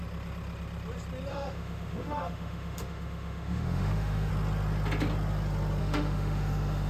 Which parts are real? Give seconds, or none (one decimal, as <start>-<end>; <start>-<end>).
0.0-1.3; 4.3-5.8